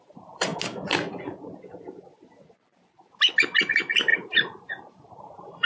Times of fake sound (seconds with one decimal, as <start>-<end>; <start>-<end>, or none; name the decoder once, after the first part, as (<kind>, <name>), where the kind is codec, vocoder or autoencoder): 0.0-0.5 (vocoder, BigVGAN v2); 3.6-5.7

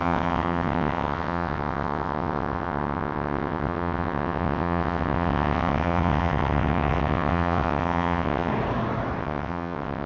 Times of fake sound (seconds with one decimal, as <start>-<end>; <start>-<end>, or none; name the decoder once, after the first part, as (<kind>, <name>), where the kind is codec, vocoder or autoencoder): 0.0-8.5 (vocoder, WaveNeXt); 9.2-10.1

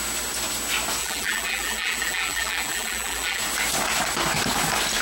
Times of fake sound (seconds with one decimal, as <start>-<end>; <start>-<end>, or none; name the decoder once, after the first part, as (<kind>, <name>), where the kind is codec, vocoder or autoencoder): 1.0-3.4 (vocoder, BigVGAN v2)

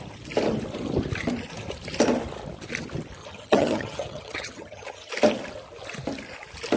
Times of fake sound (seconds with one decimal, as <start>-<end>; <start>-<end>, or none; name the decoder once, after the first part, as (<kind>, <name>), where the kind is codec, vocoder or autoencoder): 3.2-5.1 (vocoder, HiFi-GAN)

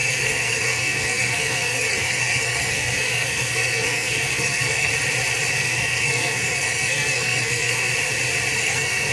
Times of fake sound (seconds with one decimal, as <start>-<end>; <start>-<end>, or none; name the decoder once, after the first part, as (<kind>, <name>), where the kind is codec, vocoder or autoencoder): 0.0-4.9 (codec, SNAC); 5.5-7.9; 8.6-9.1

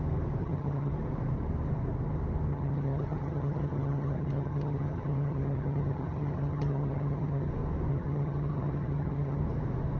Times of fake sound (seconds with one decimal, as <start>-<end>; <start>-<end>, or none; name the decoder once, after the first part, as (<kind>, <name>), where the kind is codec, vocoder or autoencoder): 0.4-0.9 (vocoder, HiFi-GAN); 2.5-7.5; 7.9-9.4

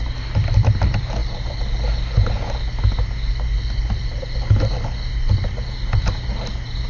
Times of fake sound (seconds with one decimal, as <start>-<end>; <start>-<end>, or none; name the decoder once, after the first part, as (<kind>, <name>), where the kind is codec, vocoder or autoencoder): none

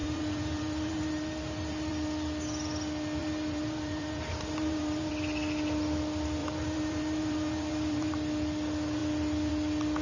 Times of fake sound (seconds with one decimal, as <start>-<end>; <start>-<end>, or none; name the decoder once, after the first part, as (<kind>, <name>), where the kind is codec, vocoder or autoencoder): 0.0-1.9 (vocoder, BigVGAN v2); 3.2-5.1; 6.4-8.1